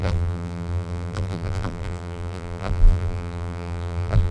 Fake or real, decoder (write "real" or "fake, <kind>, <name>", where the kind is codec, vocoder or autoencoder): fake, vocoder, BigVGAN v2